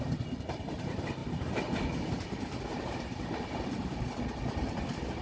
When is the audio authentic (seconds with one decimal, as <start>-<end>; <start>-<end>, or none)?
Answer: 0.0-1.2; 4.0-5.2